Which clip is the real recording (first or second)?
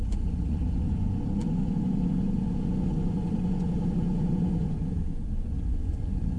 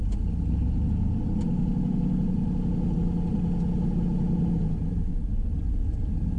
second